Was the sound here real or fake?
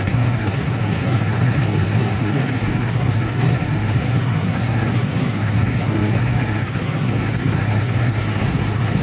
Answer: fake